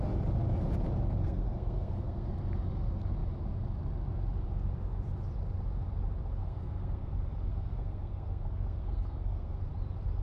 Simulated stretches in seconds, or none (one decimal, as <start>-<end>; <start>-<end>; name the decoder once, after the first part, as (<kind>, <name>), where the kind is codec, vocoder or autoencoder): 1.2-2.3 (codec, SNAC); 6.4-7.1; 7.5-9.6